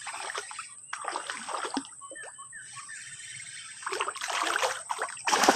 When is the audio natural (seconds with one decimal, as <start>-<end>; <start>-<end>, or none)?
0.0-2.8